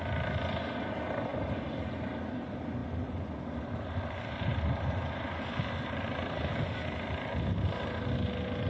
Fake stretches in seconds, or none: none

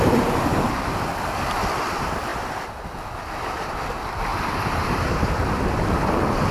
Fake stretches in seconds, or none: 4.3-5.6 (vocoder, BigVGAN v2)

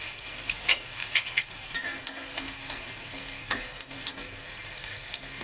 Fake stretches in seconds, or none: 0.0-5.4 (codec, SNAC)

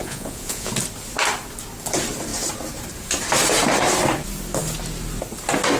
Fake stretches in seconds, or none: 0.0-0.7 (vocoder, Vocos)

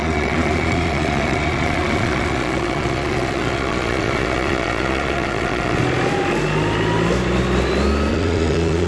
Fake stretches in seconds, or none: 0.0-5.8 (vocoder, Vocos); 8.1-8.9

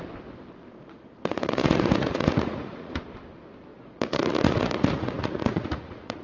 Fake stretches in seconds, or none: 0.7-2.9 (vocoder, Vocos); 3.7-6.2

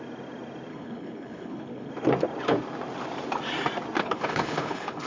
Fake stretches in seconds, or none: 0.7-1.9 (codec, HILCodec); 4.0-5.1